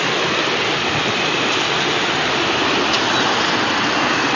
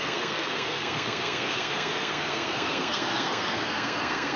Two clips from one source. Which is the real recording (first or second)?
first